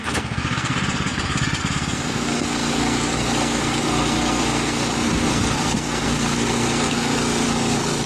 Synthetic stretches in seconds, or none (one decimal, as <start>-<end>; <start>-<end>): 0.0-8.1